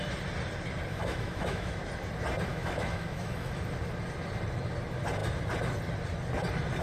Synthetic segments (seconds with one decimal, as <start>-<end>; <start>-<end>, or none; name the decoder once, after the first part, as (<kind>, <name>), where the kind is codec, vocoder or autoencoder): 0.9-1.8 (autoencoder, DAC-VAE); 2.5-3.6